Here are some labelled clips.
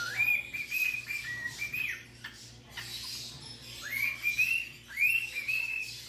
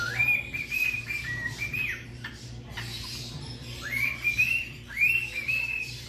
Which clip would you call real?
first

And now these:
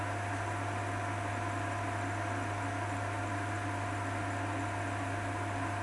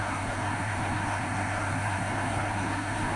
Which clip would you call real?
first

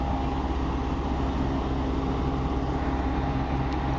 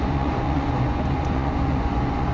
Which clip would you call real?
first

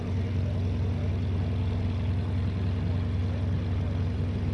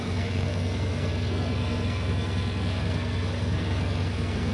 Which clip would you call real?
first